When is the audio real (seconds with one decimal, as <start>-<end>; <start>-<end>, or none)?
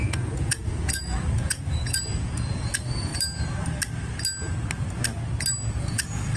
3.1-5.9